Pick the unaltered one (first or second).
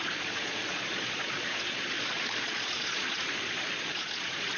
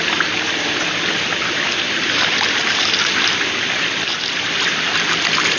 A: second